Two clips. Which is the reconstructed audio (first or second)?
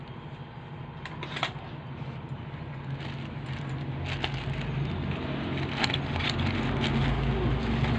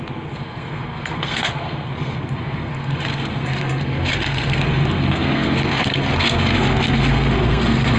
second